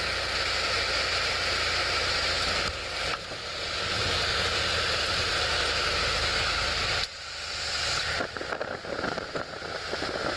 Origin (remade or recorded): recorded